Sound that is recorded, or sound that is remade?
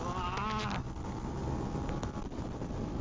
recorded